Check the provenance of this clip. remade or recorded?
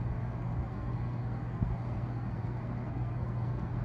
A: remade